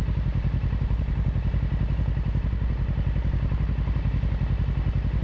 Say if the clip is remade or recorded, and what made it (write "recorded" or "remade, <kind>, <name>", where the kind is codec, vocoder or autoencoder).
recorded